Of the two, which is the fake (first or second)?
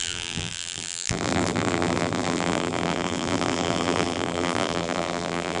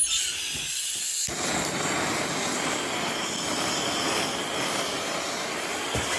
first